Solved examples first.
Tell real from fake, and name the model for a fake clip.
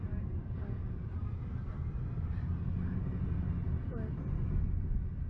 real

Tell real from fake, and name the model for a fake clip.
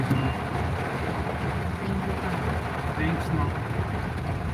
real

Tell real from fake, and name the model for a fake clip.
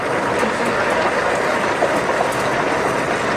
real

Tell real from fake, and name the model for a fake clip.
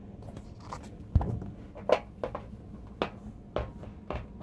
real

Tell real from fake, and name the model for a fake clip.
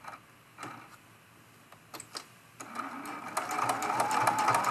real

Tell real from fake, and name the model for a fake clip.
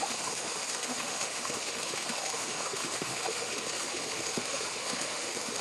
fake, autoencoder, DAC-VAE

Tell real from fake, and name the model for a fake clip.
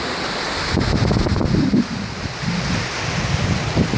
real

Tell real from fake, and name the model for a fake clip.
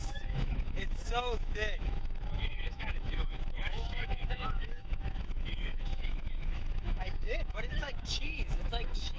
fake, autoencoder, DAC-VAE